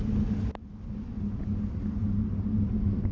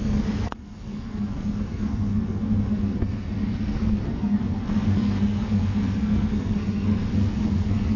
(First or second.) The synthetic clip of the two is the second